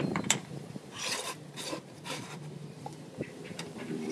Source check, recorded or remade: remade